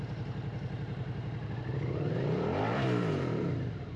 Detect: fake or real fake